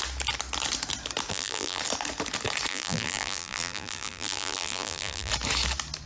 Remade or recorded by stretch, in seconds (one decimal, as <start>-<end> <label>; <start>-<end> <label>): 0.0-1.3 recorded; 1.3-1.8 remade; 1.8-2.7 recorded; 2.7-5.3 remade; 5.3-6.1 recorded